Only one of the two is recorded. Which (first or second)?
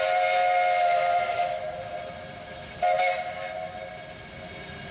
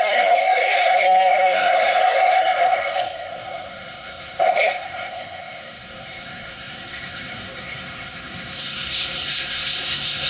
first